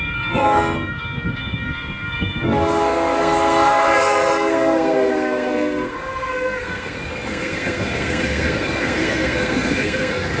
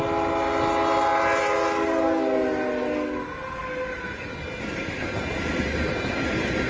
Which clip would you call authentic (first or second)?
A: second